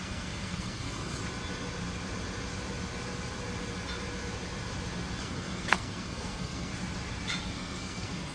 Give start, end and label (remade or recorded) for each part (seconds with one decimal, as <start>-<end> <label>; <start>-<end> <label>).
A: 0.0-1.2 remade; 1.2-5.2 recorded; 5.2-6.7 remade; 6.7-7.4 recorded; 7.4-8.3 remade